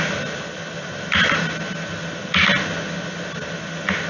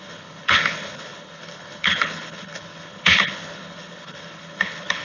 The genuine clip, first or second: first